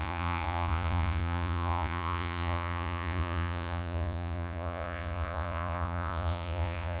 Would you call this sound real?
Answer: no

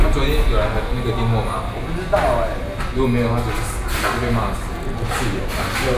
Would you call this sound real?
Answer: yes